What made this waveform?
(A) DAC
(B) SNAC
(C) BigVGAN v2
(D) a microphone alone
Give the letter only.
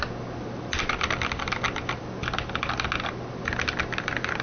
D